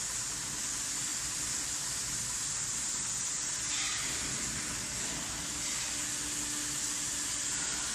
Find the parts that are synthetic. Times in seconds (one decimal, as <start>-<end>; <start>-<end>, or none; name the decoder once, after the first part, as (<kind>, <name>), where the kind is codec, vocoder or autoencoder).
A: none